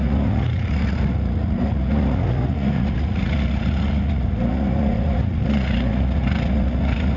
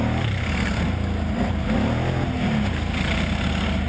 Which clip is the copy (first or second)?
first